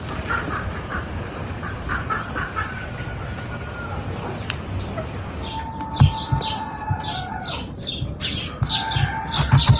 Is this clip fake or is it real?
real